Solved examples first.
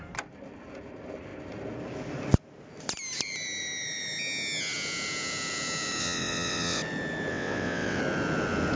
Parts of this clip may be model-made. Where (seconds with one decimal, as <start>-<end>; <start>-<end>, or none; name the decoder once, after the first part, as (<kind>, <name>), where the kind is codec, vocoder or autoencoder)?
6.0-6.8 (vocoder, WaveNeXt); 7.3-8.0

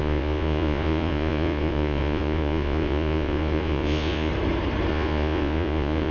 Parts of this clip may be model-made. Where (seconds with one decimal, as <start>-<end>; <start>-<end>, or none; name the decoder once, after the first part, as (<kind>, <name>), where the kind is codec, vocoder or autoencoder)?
0.0-4.3 (vocoder, Vocos); 4.9-6.1

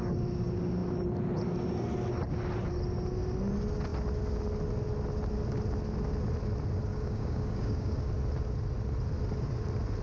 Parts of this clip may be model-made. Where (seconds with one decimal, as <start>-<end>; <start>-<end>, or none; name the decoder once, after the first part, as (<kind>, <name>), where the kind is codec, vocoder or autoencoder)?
6.9-8.1 (codec, DAC)